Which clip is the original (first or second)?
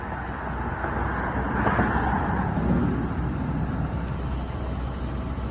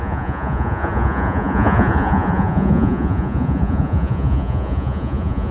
first